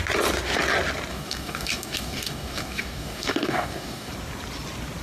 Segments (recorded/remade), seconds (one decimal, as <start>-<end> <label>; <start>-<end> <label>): 0.0-1.1 recorded; 1.1-4.1 remade; 4.1-5.0 recorded